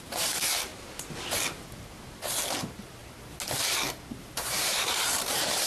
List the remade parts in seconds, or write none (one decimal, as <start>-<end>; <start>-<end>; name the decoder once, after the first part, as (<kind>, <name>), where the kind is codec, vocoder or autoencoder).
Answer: 0.0-0.7 (vocoder, BigVGAN v2); 2.6-3.0; 4.2-5.7